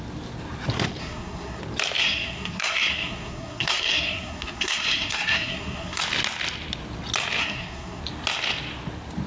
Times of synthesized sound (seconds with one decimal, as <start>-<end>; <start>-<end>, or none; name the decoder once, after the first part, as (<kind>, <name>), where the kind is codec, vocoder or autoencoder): 1.0-1.6 (codec, SNAC); 2.0-6.0; 7.4-8.0

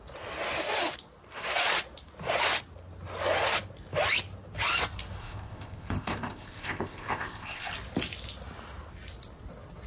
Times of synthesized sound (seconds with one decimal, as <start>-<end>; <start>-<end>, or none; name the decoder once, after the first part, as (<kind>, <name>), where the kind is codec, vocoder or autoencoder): 5.2-7.7 (codec, ZipCodec)

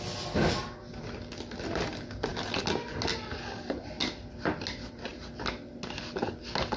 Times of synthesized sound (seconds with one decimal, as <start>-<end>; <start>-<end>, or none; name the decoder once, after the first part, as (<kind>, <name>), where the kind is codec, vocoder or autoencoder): none

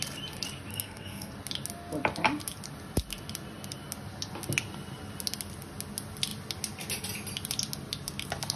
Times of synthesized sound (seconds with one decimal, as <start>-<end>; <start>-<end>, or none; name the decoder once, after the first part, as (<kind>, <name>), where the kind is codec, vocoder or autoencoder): 0.7-1.3 (codec, SNAC)

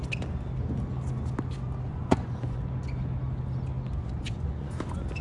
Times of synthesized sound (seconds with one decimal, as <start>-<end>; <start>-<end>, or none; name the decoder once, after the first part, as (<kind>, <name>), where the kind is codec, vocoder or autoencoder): 1.9-2.6 (vocoder, Vocos); 4.0-4.7